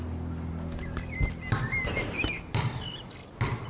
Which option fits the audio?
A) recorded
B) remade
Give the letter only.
A